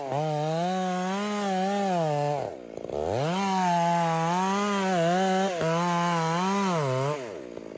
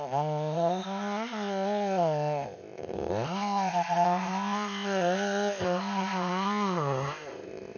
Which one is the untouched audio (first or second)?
first